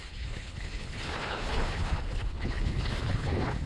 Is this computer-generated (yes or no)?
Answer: yes